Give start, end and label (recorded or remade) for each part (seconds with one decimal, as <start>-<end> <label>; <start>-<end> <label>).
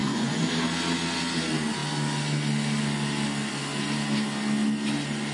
0.0-0.5 remade; 0.5-5.3 recorded